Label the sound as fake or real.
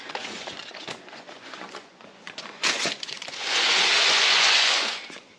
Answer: fake